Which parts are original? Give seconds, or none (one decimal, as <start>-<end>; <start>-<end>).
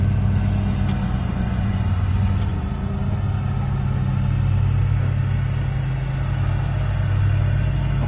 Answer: 0.0-1.0; 2.7-8.1